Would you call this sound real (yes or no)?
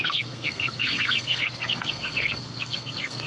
no